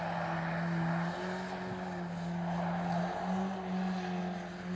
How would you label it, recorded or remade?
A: recorded